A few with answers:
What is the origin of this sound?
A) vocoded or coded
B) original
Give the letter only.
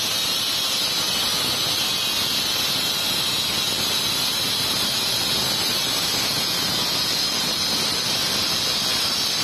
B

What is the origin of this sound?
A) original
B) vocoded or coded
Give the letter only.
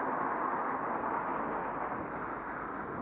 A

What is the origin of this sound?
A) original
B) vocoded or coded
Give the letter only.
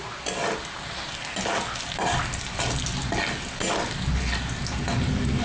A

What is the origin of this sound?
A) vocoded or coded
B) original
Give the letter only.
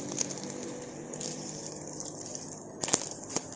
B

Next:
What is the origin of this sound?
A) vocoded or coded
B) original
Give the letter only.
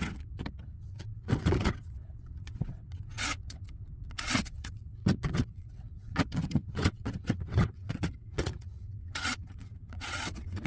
A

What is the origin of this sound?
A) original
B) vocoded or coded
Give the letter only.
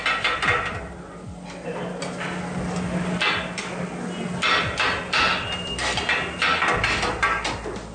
A